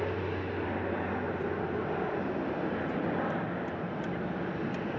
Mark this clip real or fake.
real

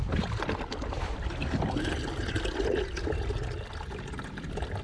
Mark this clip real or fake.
real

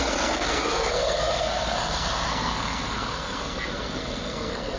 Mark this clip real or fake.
fake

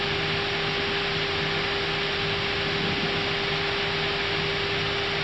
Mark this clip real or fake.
real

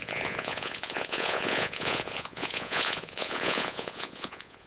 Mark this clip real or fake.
fake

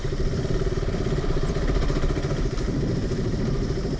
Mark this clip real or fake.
fake